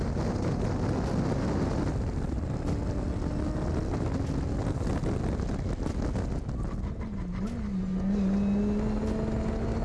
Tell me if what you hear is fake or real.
real